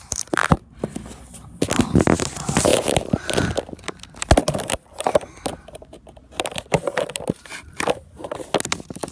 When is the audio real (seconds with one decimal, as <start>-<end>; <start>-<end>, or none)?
0.0-9.1